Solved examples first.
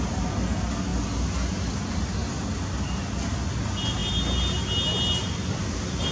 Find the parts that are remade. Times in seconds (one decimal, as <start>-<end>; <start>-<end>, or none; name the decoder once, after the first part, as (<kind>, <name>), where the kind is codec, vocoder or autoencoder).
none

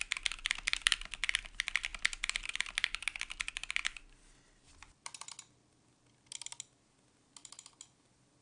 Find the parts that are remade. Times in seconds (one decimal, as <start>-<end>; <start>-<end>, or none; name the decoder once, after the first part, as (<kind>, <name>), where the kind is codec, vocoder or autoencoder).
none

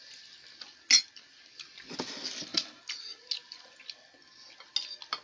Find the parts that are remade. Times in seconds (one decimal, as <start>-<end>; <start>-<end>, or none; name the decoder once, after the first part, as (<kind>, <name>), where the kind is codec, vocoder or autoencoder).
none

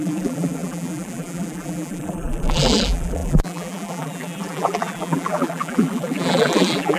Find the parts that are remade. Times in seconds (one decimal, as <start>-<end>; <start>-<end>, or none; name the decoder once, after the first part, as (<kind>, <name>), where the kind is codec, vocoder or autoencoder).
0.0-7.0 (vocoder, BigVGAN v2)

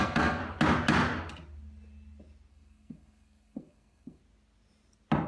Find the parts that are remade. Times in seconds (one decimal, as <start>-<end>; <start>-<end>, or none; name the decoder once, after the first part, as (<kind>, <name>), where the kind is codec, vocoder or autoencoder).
0.0-0.4 (codec, SNAC); 2.5-4.2

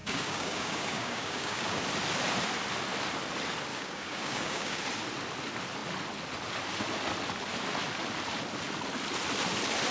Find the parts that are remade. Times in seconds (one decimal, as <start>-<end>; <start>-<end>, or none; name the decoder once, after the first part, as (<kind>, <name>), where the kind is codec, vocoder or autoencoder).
0.0-1.8 (codec, DAC); 3.7-4.8

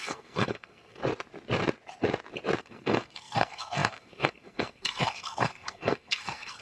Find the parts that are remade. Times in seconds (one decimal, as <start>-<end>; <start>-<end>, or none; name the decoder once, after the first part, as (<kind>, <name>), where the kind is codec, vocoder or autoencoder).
0.0-1.0 (codec, SNAC); 2.6-6.6

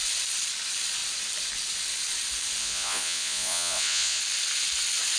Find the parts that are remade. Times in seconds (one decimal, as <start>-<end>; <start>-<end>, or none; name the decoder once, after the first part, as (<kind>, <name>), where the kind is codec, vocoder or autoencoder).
2.6-4.2 (vocoder, Vocos)